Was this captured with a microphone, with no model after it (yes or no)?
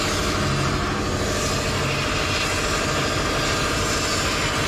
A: yes